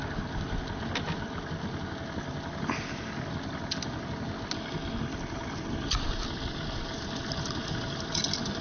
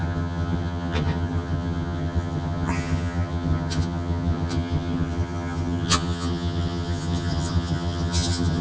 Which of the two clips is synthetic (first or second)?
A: second